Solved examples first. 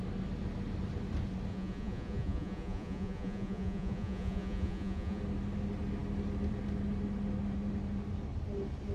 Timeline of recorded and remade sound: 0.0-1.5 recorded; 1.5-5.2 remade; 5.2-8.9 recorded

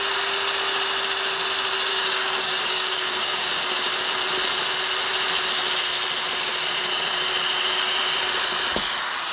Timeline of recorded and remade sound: 0.0-1.9 recorded; 1.9-3.5 remade; 3.5-9.3 recorded